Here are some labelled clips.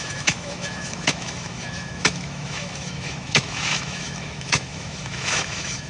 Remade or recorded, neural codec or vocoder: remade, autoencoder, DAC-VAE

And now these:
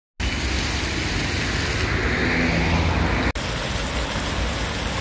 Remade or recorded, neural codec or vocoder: recorded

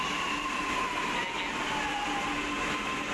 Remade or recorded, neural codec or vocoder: recorded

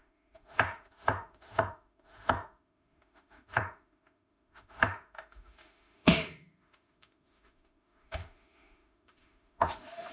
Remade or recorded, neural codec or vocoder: remade, autoencoder, DAC-VAE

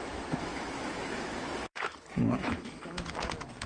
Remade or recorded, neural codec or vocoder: remade, autoencoder, DAC-VAE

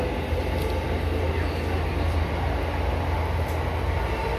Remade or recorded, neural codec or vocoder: recorded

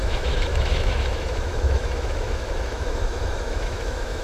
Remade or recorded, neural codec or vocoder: remade, autoencoder, DAC-VAE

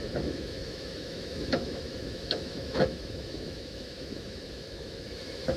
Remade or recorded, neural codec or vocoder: remade, autoencoder, DAC-VAE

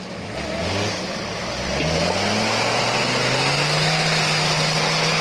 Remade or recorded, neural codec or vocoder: recorded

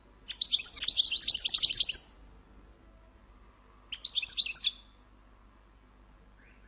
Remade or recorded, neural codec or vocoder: recorded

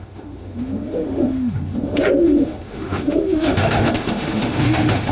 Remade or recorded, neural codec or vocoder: remade, autoencoder, DAC-VAE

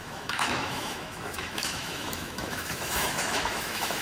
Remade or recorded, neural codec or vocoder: remade, autoencoder, DAC-VAE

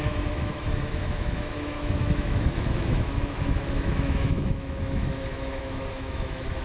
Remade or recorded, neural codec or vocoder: remade, autoencoder, DAC-VAE